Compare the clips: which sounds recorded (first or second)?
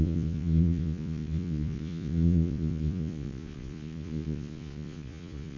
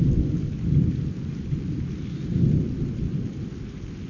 second